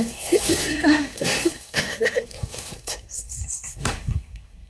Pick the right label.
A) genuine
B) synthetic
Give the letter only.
B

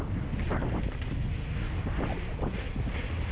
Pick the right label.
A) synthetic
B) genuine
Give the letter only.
B